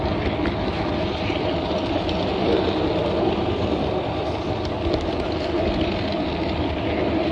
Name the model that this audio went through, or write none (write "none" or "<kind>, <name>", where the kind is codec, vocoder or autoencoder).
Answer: none